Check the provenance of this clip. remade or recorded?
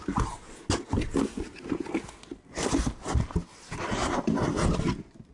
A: recorded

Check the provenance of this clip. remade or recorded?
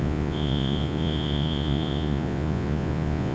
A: remade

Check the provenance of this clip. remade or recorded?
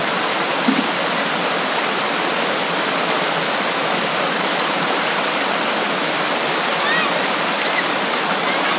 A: recorded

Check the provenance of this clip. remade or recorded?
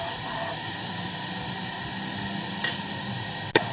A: recorded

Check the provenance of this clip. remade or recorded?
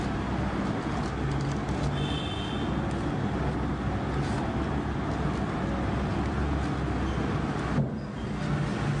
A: recorded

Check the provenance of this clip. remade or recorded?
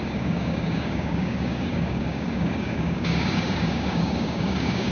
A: remade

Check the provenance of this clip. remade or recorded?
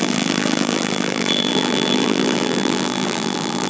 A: remade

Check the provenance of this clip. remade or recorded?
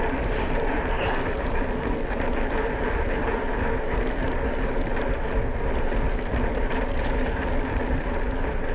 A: recorded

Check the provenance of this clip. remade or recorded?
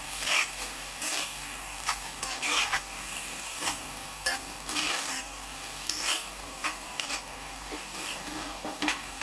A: remade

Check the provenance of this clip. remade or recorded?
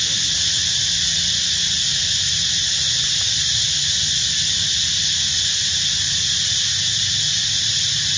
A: recorded